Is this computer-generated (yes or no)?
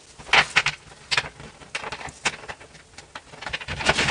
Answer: no